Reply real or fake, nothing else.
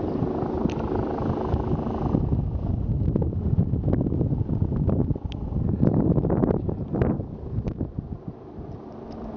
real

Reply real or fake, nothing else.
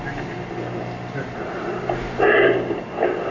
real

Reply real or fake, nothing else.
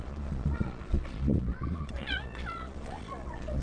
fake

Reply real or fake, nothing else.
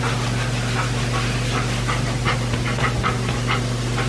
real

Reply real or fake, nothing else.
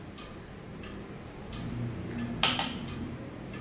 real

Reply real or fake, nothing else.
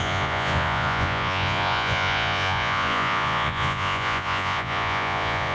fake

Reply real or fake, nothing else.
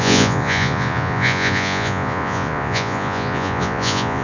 fake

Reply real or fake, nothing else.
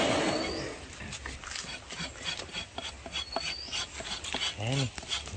real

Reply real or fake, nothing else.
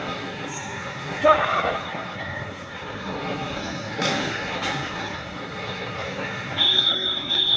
fake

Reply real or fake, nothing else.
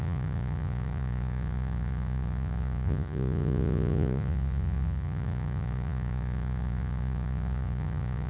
fake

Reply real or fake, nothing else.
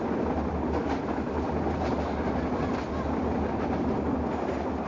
real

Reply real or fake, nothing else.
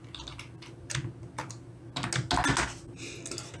real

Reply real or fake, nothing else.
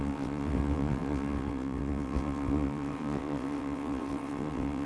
fake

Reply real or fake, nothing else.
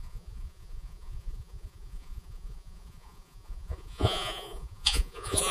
fake